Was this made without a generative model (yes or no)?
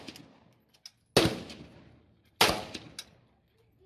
yes